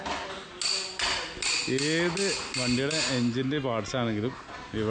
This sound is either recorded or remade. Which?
recorded